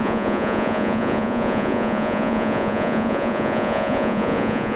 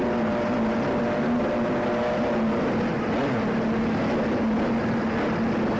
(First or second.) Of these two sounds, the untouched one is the second